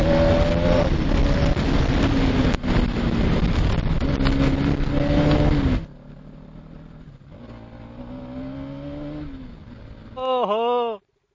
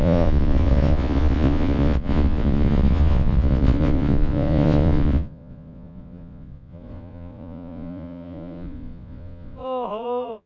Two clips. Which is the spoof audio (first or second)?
second